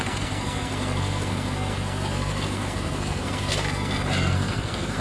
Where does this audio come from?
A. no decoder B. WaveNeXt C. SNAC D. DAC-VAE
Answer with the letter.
C